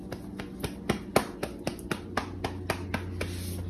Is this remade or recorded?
recorded